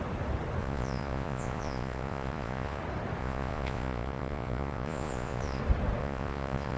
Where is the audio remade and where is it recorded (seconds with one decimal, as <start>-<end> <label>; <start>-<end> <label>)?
0.0-0.6 recorded; 0.6-2.8 remade; 2.8-3.2 recorded; 3.2-5.6 remade; 5.6-6.0 recorded; 6.0-6.8 remade